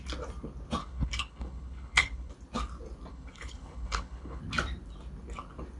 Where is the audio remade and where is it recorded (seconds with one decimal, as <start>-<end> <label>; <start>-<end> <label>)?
0.0-0.8 recorded; 0.8-2.3 remade; 2.3-3.1 recorded; 3.1-4.4 remade; 4.4-5.8 recorded